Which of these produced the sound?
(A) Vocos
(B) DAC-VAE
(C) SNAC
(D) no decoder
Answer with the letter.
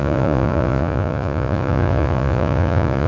A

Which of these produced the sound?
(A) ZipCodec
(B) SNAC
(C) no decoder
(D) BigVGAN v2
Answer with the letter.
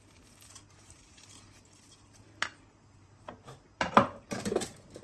D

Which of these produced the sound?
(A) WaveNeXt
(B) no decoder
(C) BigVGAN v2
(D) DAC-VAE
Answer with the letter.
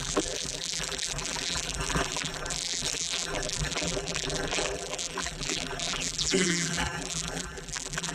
C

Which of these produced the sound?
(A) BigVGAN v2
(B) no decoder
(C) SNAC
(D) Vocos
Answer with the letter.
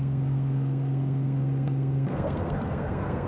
C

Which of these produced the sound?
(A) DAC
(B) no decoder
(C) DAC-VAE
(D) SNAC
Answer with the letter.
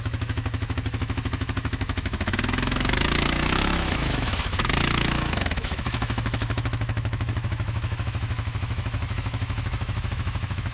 C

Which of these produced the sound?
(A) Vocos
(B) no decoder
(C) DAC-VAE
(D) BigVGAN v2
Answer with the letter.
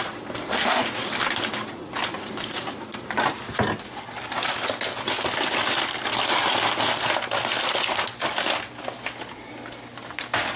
B